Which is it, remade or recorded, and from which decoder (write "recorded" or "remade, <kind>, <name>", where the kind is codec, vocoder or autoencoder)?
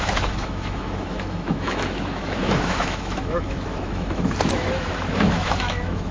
remade, autoencoder, DAC-VAE